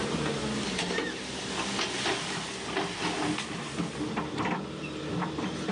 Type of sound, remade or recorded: recorded